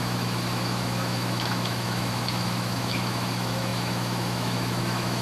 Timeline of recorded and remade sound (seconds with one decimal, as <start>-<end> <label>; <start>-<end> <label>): 0.0-5.2 remade